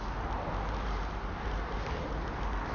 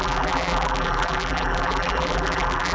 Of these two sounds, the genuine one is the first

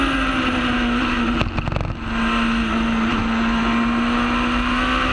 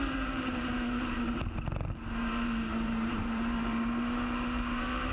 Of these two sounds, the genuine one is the first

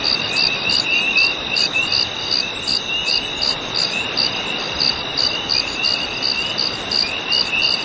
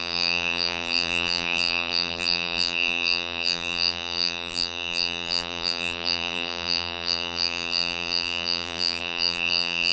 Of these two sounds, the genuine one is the first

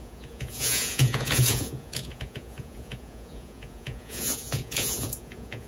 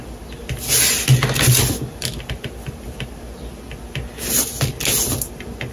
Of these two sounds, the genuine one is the second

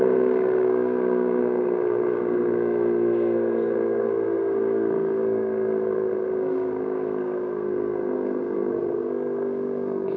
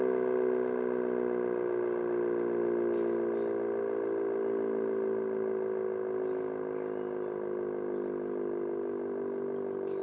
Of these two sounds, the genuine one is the second